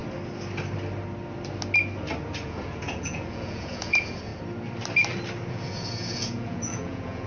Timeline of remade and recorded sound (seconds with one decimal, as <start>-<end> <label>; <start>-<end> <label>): 0.0-2.4 recorded; 2.4-4.3 remade; 4.3-5.5 recorded; 5.5-7.3 remade